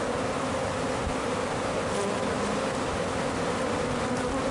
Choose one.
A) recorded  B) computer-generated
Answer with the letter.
A